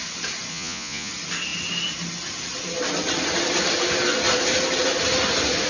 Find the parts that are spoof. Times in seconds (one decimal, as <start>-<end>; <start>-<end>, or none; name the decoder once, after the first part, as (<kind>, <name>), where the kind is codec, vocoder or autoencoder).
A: 0.5-1.1 (vocoder, Vocos)

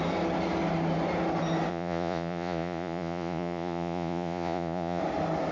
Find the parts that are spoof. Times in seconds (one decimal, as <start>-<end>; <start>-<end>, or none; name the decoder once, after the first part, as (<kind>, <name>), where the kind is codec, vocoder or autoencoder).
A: 1.7-5.0 (vocoder, Vocos)

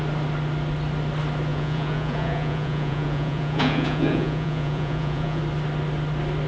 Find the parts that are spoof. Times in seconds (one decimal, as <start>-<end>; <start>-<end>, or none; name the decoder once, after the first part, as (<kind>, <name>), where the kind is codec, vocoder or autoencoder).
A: 1.5-5.4 (vocoder, Vocos)

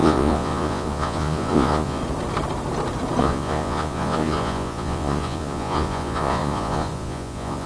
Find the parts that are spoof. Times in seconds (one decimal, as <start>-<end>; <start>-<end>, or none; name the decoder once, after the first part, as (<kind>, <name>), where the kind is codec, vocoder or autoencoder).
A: 0.0-2.0 (vocoder, Vocos); 3.2-7.7

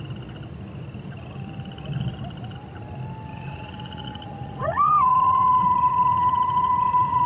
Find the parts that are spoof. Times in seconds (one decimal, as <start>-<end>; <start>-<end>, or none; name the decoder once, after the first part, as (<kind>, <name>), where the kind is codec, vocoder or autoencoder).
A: 3.3-7.3 (vocoder, Vocos)

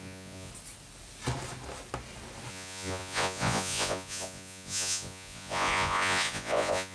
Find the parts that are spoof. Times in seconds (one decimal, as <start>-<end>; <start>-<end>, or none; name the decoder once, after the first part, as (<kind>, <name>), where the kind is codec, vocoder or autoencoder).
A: 0.0-0.5 (vocoder, Vocos); 2.5-6.9

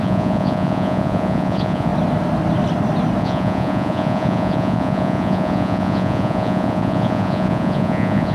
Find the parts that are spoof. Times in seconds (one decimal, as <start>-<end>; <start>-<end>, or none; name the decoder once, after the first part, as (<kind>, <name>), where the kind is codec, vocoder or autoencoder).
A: 0.0-1.9 (vocoder, Vocos); 3.2-8.3